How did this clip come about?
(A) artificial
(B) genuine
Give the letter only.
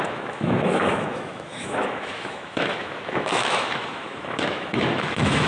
A